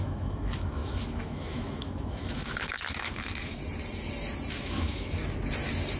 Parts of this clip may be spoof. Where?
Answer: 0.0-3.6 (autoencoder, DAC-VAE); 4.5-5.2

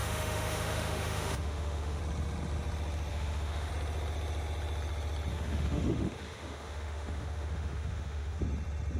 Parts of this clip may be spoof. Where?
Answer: 0.0-2.0 (autoencoder, DAC-VAE); 3.1-3.7; 5.3-8.4

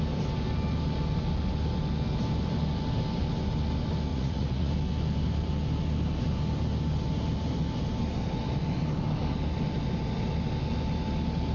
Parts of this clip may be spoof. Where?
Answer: 4.1-4.7 (vocoder, Vocos)

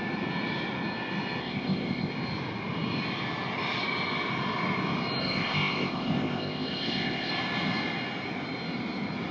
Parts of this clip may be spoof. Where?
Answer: 1.4-2.1 (codec, ZipCodec); 5.2-7.3

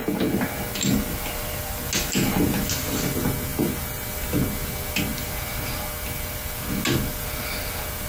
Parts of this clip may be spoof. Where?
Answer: none

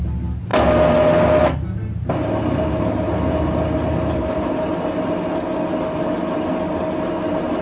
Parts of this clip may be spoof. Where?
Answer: none

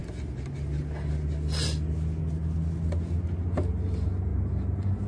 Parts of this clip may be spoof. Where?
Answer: none